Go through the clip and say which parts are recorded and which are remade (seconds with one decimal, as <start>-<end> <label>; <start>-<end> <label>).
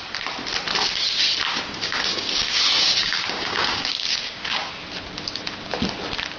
0.0-1.5 recorded; 1.5-4.7 remade; 4.7-6.4 recorded